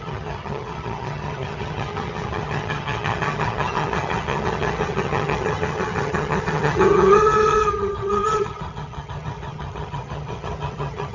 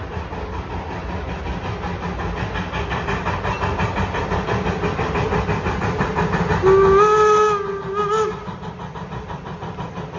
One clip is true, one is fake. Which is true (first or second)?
second